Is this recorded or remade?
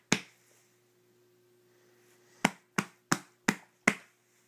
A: recorded